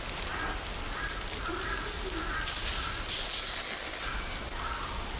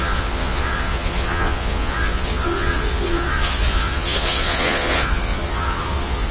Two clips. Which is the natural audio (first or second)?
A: first